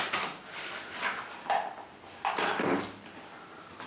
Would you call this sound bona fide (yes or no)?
yes